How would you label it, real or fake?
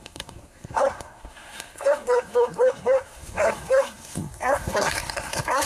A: fake